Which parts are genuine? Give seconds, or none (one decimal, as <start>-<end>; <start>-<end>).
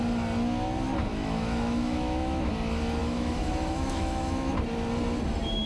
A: 0.0-1.1; 2.5-3.0; 4.5-5.7